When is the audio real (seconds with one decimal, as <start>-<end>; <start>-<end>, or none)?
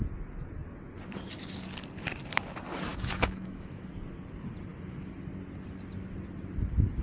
0.0-2.9; 3.8-7.0